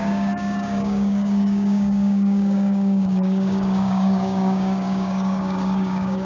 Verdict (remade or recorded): remade